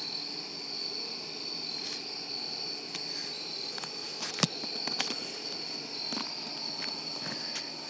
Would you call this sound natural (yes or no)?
yes